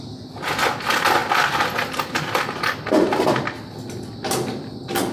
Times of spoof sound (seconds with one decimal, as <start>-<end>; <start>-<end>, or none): none